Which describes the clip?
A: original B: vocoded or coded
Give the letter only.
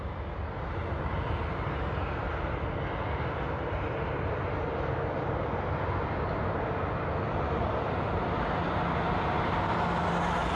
A